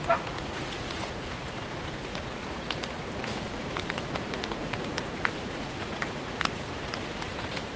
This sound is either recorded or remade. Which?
remade